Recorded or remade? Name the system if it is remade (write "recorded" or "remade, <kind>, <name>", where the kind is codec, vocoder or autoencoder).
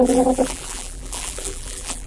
remade, vocoder, BigVGAN v2